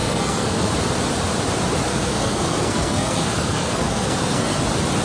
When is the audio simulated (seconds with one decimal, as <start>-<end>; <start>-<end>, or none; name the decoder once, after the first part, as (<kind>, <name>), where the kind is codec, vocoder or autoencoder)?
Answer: 0.0-0.7 (codec, SNAC); 1.9-4.6